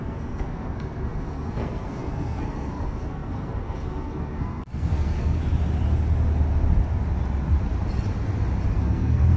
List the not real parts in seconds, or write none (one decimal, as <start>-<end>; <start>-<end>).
0.0-5.4; 8.7-9.4